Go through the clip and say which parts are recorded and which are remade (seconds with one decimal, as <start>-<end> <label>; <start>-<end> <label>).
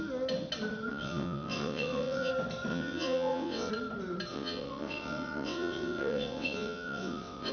0.0-0.9 recorded; 0.9-2.3 remade; 2.3-2.7 recorded; 2.7-3.7 remade; 3.7-4.3 recorded; 4.3-7.5 remade